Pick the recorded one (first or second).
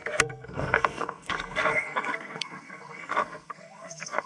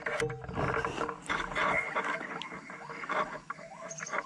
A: second